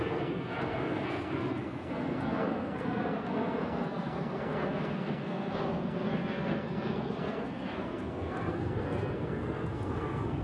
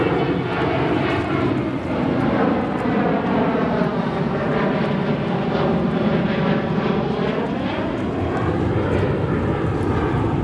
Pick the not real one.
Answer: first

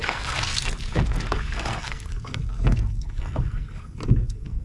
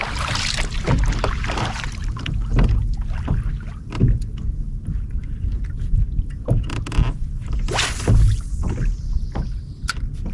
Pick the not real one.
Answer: first